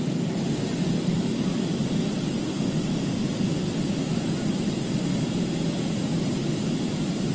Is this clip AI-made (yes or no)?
no